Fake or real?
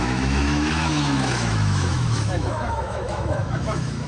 fake